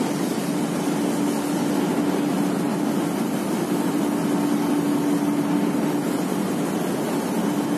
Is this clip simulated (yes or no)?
no